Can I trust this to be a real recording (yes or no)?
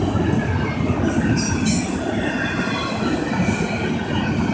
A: yes